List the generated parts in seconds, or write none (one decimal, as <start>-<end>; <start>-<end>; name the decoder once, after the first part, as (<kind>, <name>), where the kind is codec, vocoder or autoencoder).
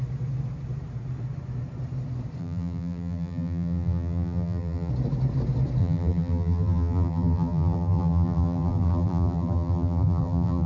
2.4-4.9 (vocoder, BigVGAN v2); 5.8-10.7